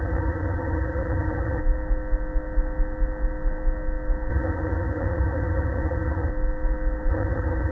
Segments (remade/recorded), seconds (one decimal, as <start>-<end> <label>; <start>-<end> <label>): 0.0-1.6 remade; 1.6-4.3 recorded; 4.3-6.3 remade; 6.3-7.1 recorded; 7.1-7.7 remade